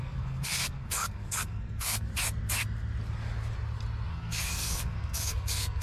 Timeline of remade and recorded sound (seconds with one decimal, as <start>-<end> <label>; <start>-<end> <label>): 0.0-2.1 remade; 2.1-4.1 recorded; 4.1-5.8 remade